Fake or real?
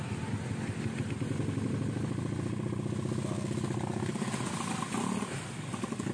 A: real